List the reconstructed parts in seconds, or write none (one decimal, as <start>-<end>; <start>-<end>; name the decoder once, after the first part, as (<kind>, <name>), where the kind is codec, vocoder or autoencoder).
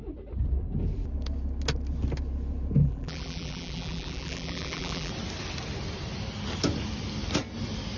2.8-5.1 (vocoder, BigVGAN v2)